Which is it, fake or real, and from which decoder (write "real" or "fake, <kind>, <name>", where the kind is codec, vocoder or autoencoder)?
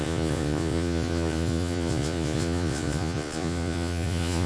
fake, vocoder, Vocos